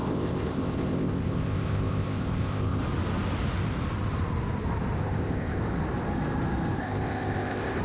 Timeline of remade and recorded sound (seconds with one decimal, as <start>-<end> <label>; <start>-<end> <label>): 0.0-2.8 remade; 2.8-5.0 recorded; 5.0-5.6 remade; 5.6-6.8 recorded; 6.8-7.8 remade